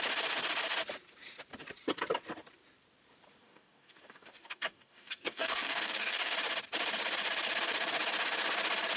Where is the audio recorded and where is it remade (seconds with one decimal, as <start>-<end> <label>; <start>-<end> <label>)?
0.0-3.4 recorded; 3.4-6.3 remade; 6.3-9.0 recorded